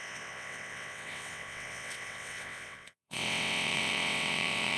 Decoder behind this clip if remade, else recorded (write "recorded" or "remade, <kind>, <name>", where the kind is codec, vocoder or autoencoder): remade, vocoder, WaveNeXt